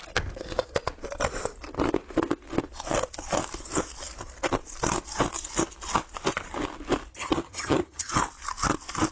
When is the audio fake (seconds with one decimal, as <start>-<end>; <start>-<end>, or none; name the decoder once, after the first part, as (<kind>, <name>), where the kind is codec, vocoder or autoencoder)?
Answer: 7.1-8.1 (vocoder, HiFi-GAN)